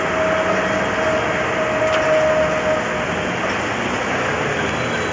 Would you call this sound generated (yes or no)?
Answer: no